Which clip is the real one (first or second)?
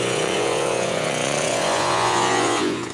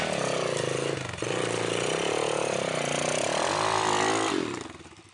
second